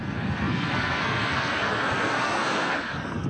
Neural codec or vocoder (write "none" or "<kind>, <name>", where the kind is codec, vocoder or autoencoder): codec, SNAC